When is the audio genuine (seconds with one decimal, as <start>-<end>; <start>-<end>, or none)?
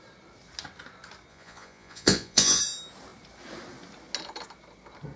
0.0-1.3; 2.6-5.2